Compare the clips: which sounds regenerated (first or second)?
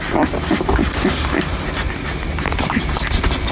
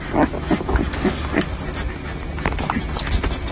first